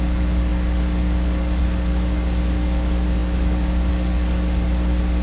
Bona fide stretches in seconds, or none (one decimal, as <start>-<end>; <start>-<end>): none